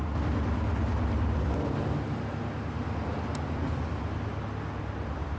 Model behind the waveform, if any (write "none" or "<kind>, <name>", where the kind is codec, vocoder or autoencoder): none